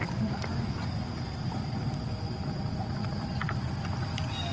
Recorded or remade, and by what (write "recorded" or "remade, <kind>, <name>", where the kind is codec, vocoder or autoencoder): recorded